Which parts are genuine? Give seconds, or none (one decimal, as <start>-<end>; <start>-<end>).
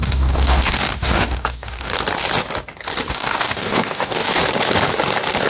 1.9-3.1; 4.4-5.5